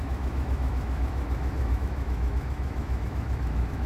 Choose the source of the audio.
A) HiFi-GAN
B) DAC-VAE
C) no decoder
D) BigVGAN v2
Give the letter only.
B